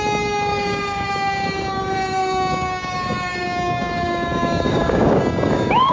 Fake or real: fake